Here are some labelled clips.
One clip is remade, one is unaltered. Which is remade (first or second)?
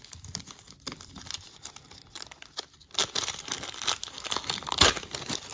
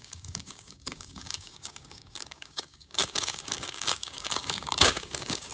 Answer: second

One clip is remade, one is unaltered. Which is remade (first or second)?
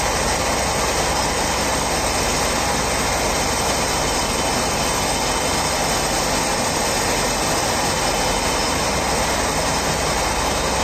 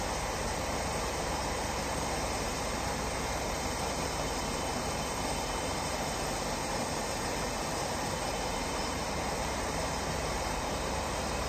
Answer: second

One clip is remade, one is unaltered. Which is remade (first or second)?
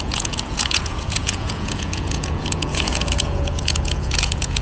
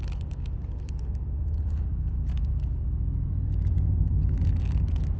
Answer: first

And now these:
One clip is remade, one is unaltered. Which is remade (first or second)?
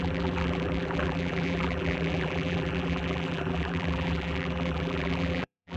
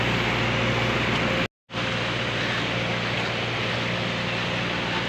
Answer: first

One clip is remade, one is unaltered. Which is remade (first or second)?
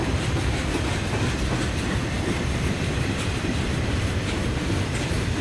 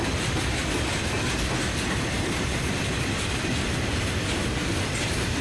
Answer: first